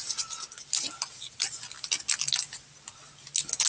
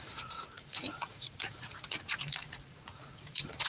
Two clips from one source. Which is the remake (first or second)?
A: second